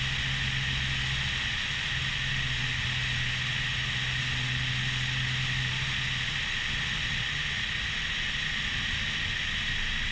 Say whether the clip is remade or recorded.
recorded